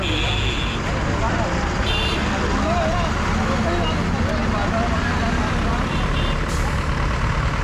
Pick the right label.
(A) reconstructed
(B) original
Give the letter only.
B